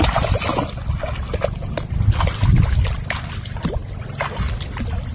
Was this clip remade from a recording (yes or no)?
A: no